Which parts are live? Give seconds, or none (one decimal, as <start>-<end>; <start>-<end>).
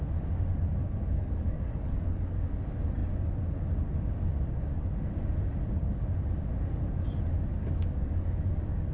0.0-0.8; 2.6-7.6